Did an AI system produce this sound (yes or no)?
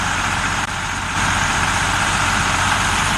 yes